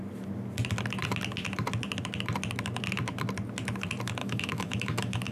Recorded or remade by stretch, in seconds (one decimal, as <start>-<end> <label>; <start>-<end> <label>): 0.0-4.2 recorded; 4.2-5.3 remade